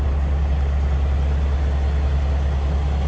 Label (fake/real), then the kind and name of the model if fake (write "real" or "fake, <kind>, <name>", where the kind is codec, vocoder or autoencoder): real